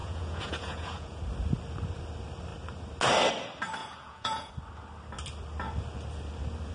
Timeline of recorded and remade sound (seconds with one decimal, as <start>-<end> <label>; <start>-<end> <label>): 0.0-1.2 remade; 1.2-3.8 recorded; 3.8-4.5 remade; 4.5-6.7 recorded